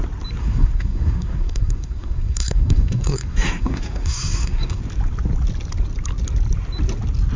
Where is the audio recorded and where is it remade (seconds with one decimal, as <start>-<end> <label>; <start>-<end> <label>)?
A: 0.0-0.4 recorded; 0.4-4.8 remade; 4.8-7.4 recorded